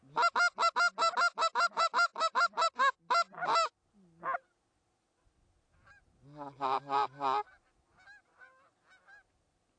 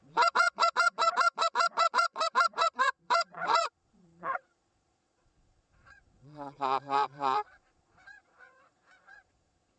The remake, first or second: second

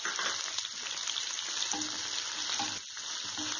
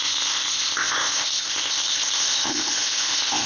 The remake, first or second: second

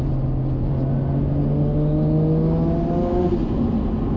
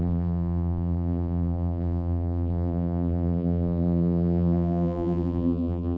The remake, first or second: second